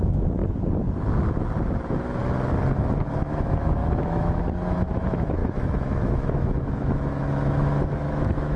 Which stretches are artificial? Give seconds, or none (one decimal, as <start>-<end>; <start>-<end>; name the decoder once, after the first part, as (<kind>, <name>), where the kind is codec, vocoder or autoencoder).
0.0-0.4 (autoencoder, DAC-VAE); 1.7-2.2; 3.1-8.6